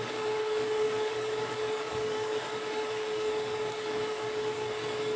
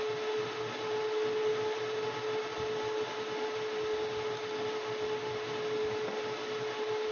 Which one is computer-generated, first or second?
first